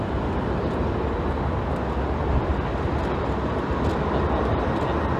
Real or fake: real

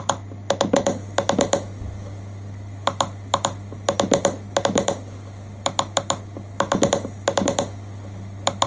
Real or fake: real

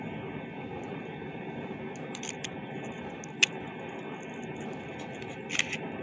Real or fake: real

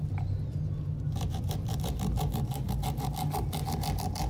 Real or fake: real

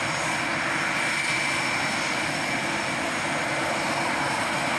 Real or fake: real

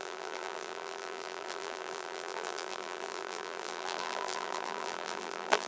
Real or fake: fake